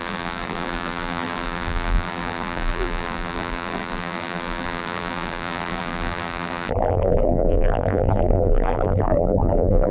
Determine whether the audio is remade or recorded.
remade